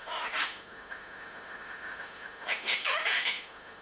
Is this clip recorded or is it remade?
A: remade